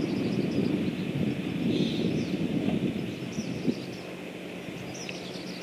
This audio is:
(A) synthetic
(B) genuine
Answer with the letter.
B